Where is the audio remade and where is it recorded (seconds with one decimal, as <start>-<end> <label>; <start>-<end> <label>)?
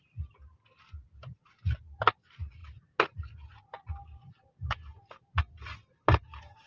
0.0-6.7 recorded